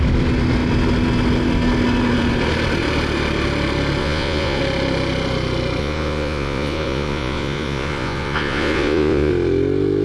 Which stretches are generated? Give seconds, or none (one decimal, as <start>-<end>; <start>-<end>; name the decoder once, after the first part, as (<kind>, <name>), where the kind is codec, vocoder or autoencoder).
4.0-4.6 (vocoder, Vocos); 5.8-9.3